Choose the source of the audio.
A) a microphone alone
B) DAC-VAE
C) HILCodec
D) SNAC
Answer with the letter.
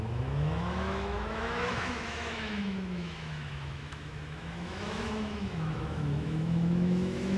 B